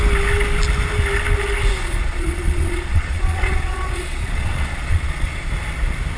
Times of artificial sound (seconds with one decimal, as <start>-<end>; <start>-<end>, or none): 1.8-5.5